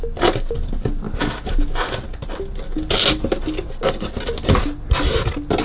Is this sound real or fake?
real